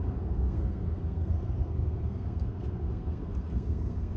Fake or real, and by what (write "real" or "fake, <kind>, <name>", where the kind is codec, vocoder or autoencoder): fake, codec, SNAC